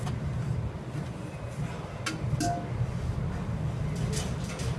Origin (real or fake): real